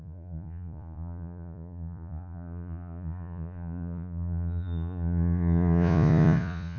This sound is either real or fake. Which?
fake